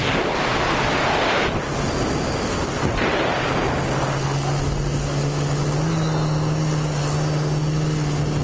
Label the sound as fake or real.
real